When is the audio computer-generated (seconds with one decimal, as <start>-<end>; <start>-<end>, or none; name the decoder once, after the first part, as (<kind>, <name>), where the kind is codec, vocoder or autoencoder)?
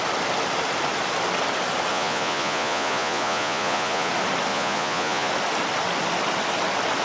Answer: 1.9-4.1 (vocoder, Vocos); 4.5-5.3